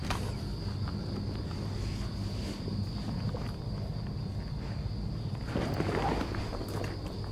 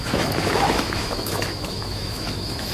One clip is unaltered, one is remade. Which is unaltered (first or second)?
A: first